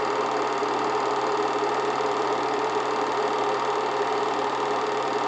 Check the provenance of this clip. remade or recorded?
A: recorded